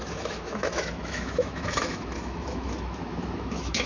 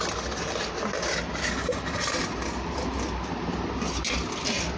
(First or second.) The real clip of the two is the second